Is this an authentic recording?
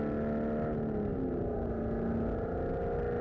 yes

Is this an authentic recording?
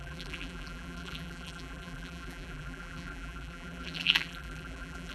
no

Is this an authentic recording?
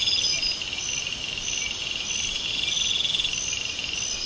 yes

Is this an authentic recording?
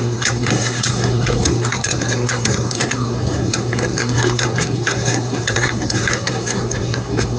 no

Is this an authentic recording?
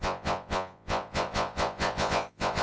no